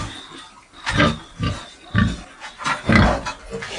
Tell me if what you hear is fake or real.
real